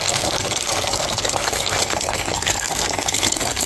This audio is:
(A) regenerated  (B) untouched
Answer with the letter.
A